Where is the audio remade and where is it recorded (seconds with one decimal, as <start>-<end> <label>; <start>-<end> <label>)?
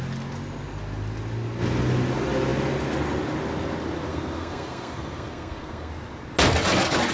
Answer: 0.0-4.1 recorded; 4.1-5.9 remade; 5.9-7.1 recorded